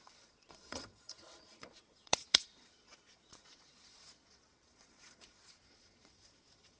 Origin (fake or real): fake